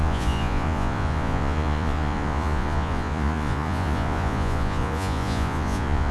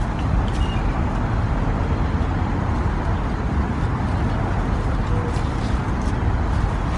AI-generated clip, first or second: first